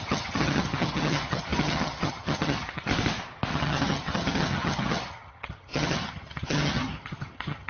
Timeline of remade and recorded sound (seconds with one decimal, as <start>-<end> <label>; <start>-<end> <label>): 0.0-2.9 remade; 2.9-3.5 recorded; 3.5-7.7 remade